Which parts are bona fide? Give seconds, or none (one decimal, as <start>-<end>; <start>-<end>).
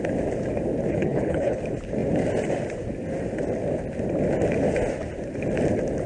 0.0-0.9; 1.6-6.1